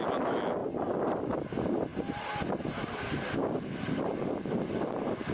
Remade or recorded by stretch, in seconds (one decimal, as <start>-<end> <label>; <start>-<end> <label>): 0.0-5.3 recorded